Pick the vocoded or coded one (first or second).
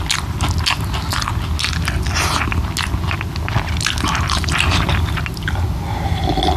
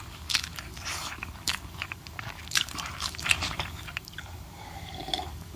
second